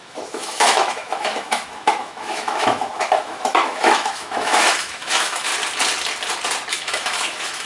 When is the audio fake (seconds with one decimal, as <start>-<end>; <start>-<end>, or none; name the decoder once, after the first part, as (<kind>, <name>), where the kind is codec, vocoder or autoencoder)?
0.0-5.5 (autoencoder, DAC-VAE); 6.7-7.7